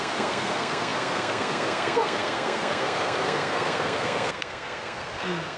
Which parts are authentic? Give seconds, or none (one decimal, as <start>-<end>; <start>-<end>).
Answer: none